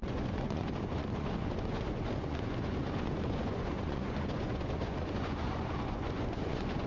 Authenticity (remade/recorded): remade